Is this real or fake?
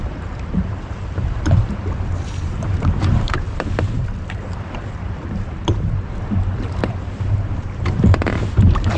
fake